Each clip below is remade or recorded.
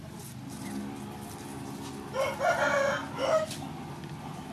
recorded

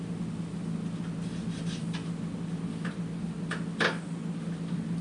recorded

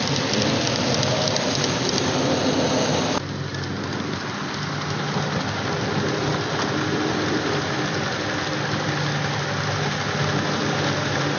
recorded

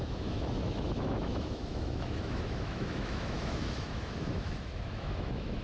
remade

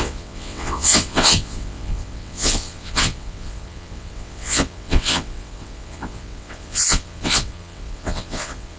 remade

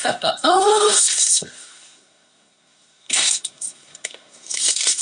remade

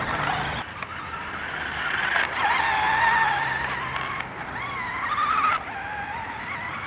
remade